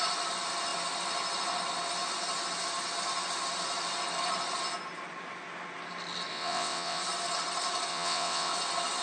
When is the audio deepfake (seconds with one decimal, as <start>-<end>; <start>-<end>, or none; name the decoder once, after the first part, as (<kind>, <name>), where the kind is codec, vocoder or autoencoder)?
6.3-7.0 (vocoder, WaveNeXt); 7.9-8.5